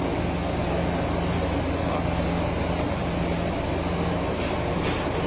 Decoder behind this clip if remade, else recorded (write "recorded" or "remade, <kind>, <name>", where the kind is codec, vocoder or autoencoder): recorded